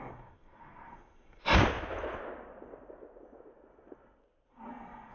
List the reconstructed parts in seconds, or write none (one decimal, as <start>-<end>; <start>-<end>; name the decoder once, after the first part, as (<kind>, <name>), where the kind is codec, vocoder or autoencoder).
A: 0.0-1.5 (codec, SNAC); 4.5-5.1